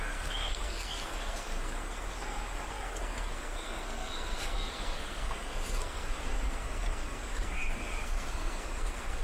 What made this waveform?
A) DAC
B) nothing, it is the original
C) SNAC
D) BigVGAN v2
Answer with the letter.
C